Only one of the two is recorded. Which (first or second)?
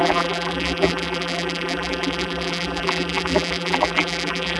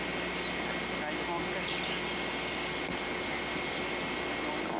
second